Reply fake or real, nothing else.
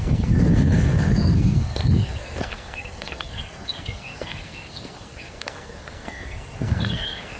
fake